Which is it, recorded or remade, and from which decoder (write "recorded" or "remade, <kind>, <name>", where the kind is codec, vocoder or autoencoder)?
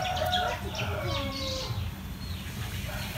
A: recorded